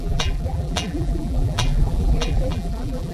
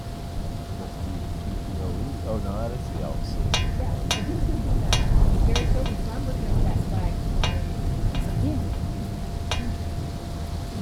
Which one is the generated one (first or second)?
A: first